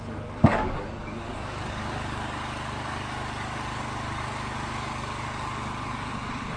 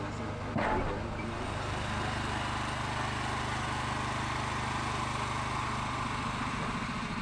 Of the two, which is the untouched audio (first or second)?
second